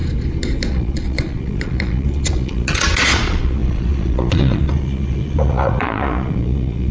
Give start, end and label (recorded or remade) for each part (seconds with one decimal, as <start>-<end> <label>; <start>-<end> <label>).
0.0-0.7 recorded; 0.7-6.9 remade